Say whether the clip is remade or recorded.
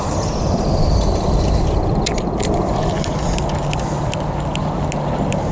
recorded